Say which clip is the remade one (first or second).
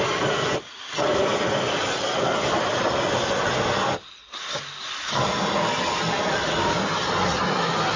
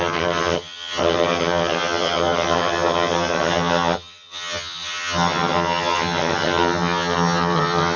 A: second